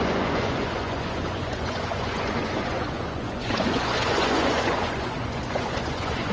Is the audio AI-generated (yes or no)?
yes